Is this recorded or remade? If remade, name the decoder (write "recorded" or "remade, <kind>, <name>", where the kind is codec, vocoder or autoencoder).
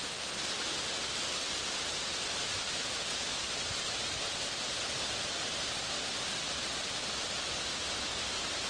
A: recorded